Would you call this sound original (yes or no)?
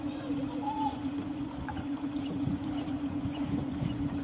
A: no